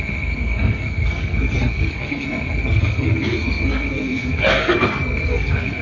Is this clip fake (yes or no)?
yes